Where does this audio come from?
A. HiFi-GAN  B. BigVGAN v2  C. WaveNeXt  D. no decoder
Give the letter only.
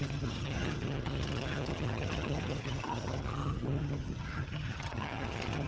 A